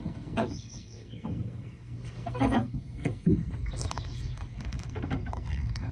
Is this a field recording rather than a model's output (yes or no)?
no